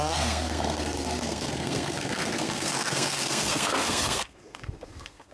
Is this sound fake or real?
fake